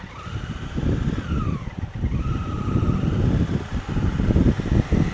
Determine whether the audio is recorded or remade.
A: recorded